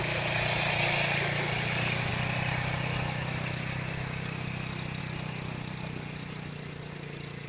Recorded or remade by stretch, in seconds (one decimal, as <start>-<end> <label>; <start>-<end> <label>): 0.0-7.5 recorded